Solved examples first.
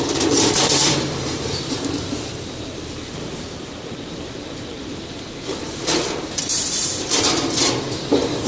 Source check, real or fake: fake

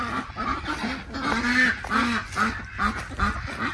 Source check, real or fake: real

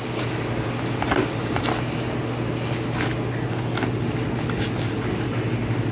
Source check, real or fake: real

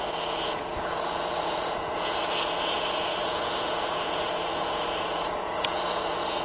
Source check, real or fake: fake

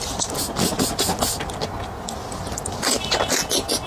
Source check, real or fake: real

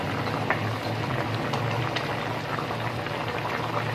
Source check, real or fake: real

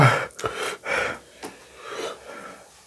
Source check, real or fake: real